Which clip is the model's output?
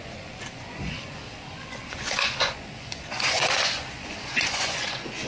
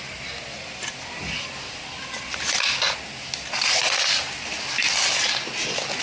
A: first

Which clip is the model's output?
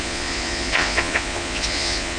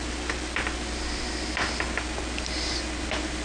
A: first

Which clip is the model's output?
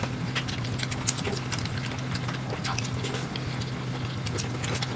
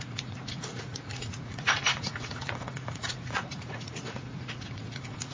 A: second